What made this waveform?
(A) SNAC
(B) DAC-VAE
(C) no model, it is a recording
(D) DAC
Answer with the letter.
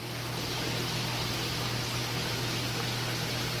C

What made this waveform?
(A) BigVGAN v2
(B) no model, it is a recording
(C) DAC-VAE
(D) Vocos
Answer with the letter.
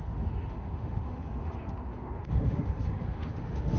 C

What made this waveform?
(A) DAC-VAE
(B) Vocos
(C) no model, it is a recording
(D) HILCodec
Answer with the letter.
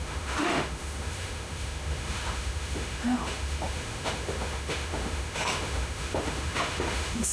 A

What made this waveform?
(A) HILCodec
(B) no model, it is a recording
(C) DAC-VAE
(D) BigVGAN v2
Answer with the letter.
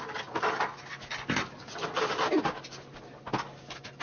B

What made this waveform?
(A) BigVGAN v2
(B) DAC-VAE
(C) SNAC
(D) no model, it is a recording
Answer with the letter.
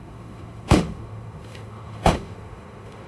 B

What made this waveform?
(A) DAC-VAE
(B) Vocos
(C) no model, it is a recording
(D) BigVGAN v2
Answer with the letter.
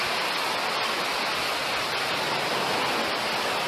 C